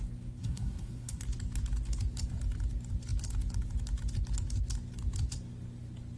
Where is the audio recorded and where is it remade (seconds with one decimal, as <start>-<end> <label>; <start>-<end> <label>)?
0.0-0.4 recorded; 0.4-1.2 remade; 1.2-6.2 recorded